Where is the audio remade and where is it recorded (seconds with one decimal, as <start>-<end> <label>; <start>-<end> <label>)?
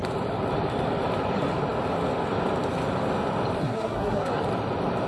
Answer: 0.0-3.6 recorded; 3.6-4.4 remade; 4.4-5.1 recorded